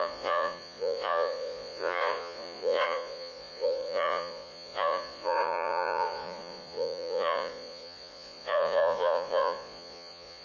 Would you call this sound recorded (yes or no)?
no